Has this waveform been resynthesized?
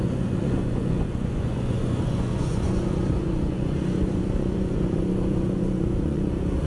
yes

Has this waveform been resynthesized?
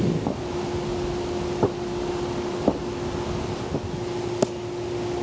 no